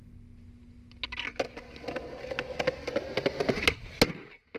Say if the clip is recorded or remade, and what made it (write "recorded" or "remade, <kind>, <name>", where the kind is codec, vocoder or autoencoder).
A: recorded